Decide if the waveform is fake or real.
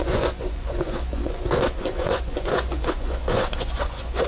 fake